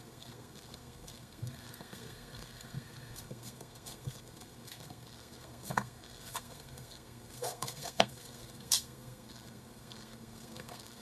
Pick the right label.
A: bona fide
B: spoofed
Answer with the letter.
B